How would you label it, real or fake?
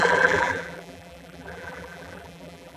fake